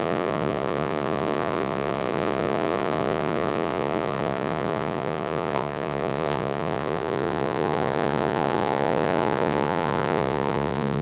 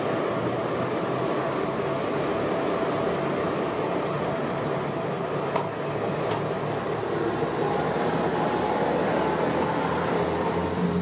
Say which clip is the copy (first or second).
first